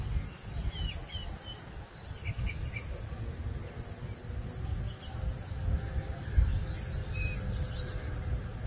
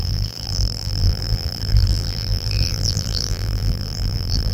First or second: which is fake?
second